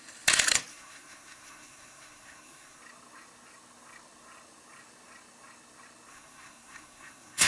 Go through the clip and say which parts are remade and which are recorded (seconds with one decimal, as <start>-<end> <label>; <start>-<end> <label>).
0.0-0.7 recorded; 0.7-2.8 remade; 2.8-6.1 recorded; 6.1-7.5 remade